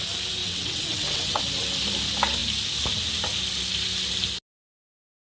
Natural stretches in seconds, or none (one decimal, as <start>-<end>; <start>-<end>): 0.0-0.4; 1.4-5.2